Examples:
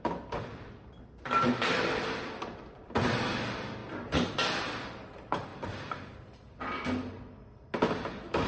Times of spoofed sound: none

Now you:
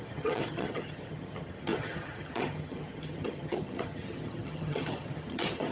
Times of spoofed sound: 0.0-5.7 (vocoder, HiFi-GAN)